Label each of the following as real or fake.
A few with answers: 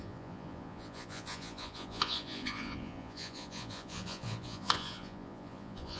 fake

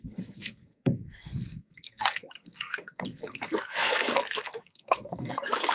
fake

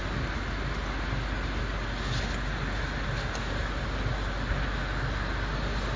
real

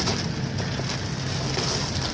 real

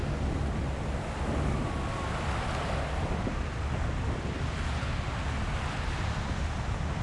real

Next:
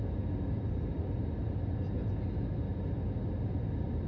real